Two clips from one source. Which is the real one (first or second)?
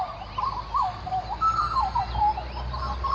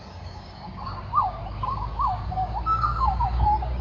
first